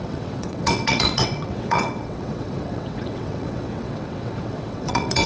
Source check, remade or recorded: remade